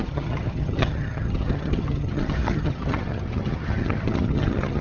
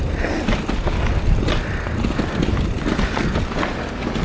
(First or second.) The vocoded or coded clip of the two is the first